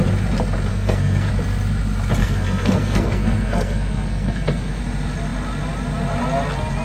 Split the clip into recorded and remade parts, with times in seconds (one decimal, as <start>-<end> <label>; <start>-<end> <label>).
0.0-0.7 recorded; 0.7-1.3 remade; 1.3-2.2 recorded; 2.2-4.8 remade; 4.8-6.8 recorded